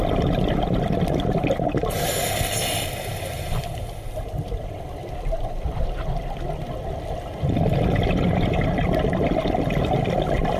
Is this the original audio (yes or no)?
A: yes